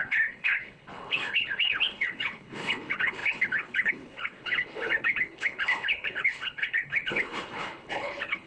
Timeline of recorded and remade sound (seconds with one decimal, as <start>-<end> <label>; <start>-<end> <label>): 0.0-8.5 remade